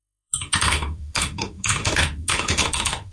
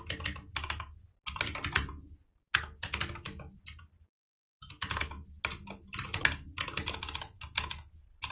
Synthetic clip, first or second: first